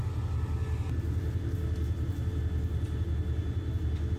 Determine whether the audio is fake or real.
real